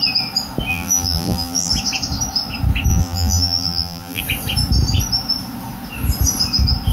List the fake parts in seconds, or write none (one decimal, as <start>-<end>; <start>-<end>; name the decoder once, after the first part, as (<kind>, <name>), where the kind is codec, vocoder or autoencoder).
0.7-1.7 (vocoder, BigVGAN v2); 2.9-4.2